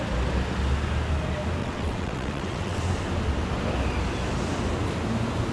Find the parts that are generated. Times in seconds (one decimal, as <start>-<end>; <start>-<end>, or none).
1.6-2.8